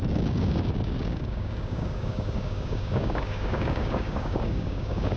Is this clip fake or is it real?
fake